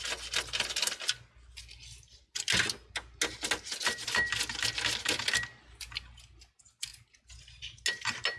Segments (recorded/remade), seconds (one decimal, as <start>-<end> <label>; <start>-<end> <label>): 0.0-8.4 recorded